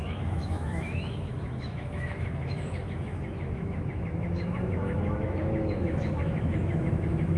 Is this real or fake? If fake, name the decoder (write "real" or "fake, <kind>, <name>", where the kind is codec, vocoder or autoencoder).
fake, autoencoder, DAC-VAE